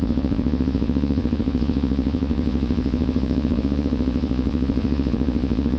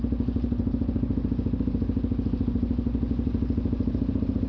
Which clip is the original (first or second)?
second